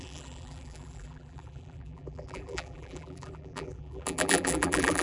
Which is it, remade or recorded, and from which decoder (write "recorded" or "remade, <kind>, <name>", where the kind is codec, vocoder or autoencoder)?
remade, vocoder, BigVGAN v2